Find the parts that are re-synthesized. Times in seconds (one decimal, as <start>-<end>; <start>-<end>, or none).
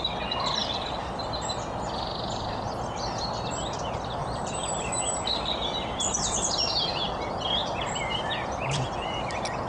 0.6-1.2; 4.2-6.9; 7.6-9.2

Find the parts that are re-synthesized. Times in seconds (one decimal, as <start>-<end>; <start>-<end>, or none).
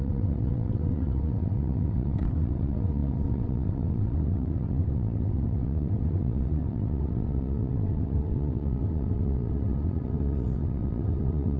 0.0-11.6